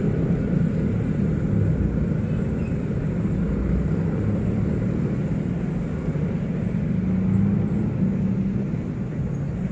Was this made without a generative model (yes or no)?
yes